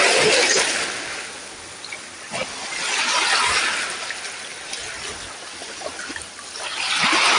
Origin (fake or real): real